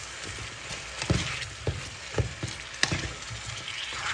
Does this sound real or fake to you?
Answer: real